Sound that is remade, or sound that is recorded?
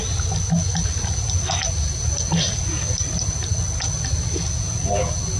recorded